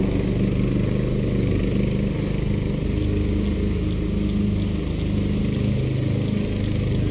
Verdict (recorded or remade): recorded